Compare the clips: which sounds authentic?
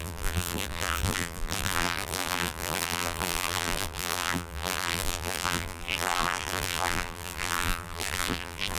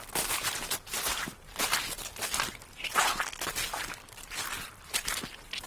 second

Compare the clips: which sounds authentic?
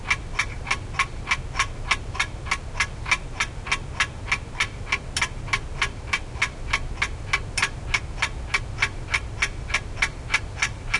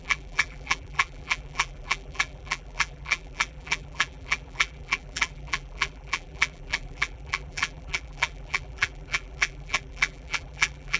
first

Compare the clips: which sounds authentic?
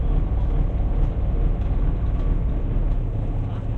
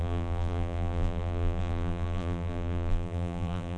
first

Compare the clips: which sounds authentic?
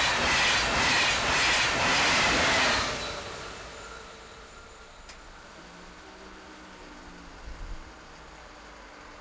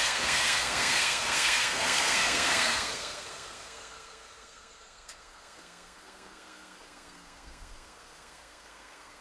first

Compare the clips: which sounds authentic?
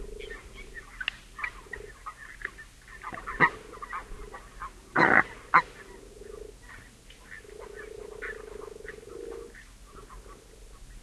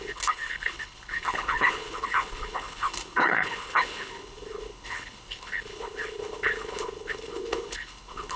first